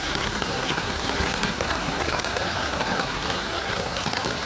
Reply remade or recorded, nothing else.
remade